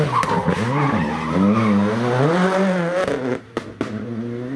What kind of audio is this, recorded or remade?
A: recorded